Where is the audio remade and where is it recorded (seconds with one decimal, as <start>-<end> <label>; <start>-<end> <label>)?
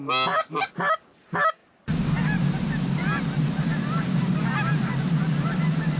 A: 0.0-6.0 recorded